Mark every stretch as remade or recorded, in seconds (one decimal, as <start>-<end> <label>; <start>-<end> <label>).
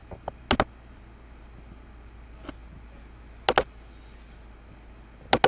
0.0-5.5 recorded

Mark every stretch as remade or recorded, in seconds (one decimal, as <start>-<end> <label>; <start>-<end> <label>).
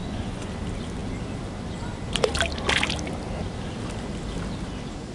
0.0-0.5 remade; 0.5-5.1 recorded